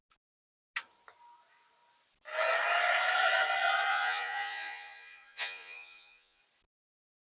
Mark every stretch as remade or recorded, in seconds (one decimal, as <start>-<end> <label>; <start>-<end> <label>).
0.0-3.9 recorded; 3.9-6.4 remade; 6.4-7.4 recorded